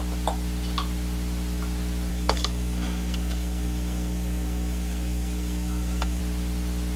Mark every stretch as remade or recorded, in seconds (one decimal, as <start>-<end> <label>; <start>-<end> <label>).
0.0-2.1 recorded; 2.1-6.2 remade; 6.2-7.0 recorded